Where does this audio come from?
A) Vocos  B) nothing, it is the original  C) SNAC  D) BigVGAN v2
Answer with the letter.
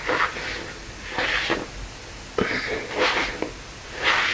B